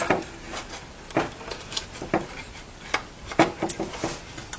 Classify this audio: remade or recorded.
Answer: recorded